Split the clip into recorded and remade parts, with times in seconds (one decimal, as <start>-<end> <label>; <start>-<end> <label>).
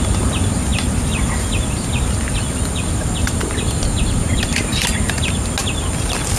0.0-6.4 recorded